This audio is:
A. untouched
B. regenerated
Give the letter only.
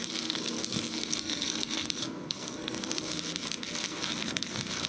B